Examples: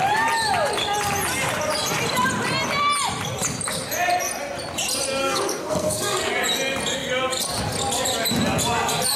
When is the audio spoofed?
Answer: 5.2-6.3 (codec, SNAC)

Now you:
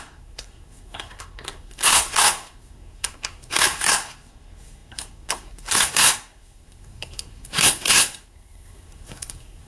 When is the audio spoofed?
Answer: 0.0-9.7 (codec, SNAC)

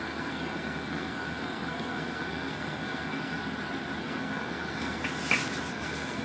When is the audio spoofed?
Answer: 0.0-3.4 (codec, SNAC); 4.0-5.0; 5.7-6.2